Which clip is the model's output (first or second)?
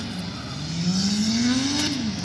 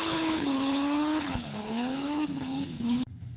second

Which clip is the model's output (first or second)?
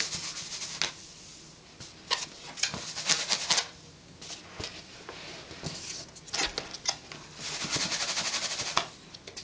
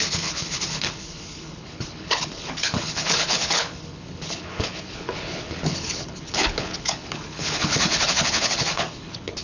second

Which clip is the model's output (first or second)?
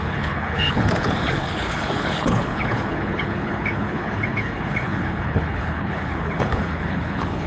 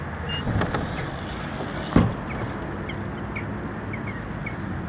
first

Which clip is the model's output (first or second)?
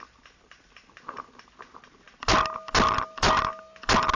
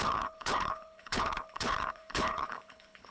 second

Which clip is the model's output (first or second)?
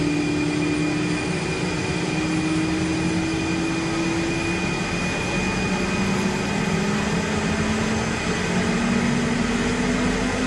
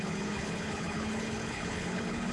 second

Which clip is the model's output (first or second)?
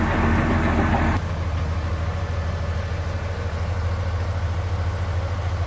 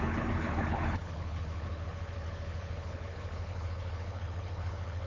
second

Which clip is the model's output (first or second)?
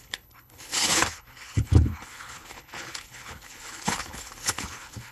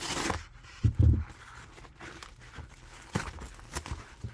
first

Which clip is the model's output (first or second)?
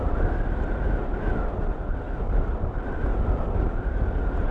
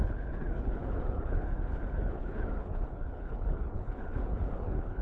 second